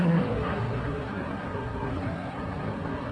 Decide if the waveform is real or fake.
fake